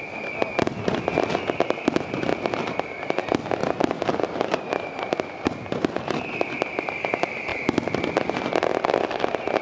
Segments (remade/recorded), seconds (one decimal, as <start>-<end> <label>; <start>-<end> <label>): 0.0-2.3 recorded; 2.3-3.0 remade; 3.0-3.6 recorded; 3.6-6.2 remade; 6.2-9.6 recorded